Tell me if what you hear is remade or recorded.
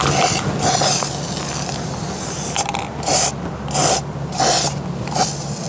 recorded